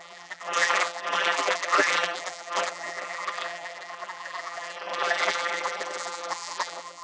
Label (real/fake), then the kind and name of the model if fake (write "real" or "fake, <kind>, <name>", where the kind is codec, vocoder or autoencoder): fake, vocoder, BigVGAN v2